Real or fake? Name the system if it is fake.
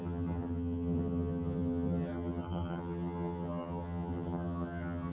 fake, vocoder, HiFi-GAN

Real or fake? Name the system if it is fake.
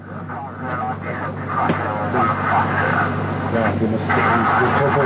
real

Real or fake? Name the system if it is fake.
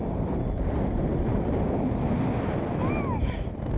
real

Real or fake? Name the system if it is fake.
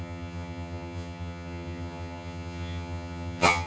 fake, vocoder, HiFi-GAN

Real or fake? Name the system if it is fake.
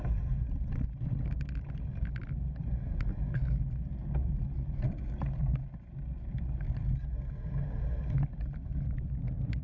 real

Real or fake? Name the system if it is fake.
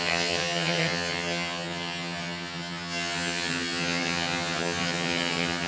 fake, vocoder, HiFi-GAN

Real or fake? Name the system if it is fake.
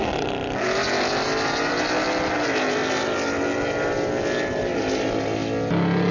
real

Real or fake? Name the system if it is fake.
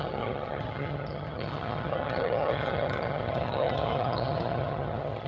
fake, vocoder, HiFi-GAN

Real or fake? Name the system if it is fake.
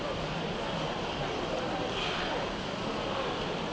real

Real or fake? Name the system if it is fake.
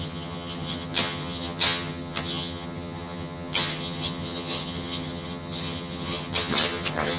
fake, vocoder, HiFi-GAN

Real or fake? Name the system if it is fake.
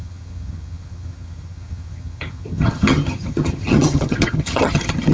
fake, vocoder, HiFi-GAN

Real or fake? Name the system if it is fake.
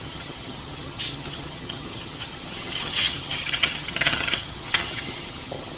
fake, vocoder, HiFi-GAN